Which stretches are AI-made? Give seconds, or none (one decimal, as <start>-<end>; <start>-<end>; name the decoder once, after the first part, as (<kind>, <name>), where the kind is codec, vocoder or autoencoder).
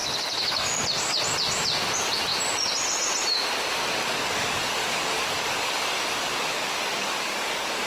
0.0-1.2 (codec, DAC); 4.0-7.9